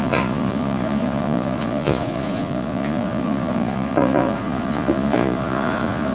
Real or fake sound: fake